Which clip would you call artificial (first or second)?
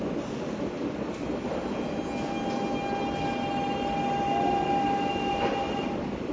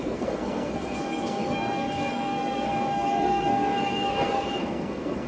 second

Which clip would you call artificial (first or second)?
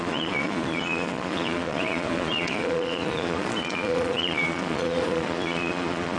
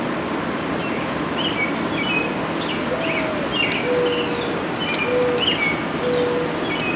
first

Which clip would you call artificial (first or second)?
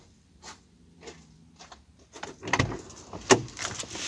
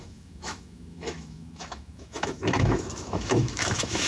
second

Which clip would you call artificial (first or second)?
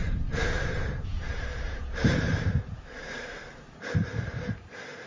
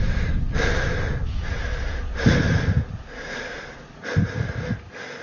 first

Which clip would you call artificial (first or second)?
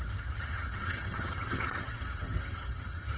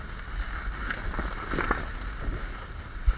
first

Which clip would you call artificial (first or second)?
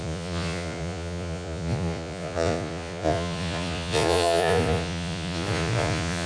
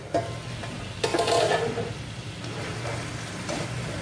first